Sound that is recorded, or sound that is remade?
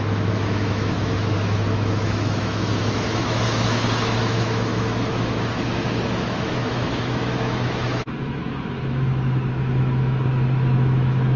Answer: remade